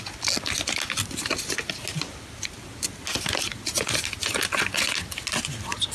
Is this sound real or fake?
real